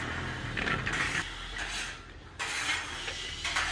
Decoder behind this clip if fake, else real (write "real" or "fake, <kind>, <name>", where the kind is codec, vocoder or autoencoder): real